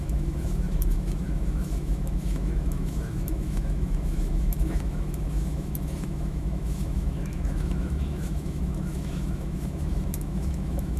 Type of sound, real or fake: fake